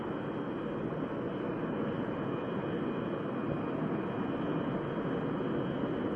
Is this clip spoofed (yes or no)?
no